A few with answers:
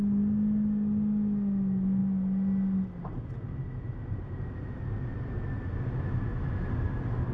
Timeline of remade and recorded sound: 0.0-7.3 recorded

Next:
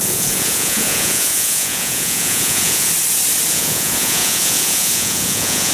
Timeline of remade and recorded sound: 0.0-2.9 remade; 2.9-3.5 recorded; 3.5-5.7 remade

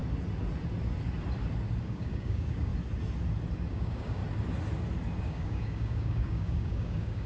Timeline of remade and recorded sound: 0.0-1.8 recorded; 1.8-2.7 remade; 2.7-3.7 recorded; 3.7-4.2 remade; 4.2-5.2 recorded; 5.2-7.3 remade

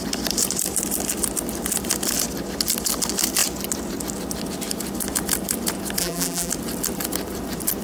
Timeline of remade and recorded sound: 0.0-6.0 recorded; 6.0-6.5 remade; 6.5-7.8 recorded

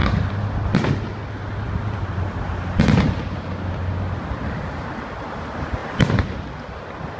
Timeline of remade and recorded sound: 0.0-7.2 recorded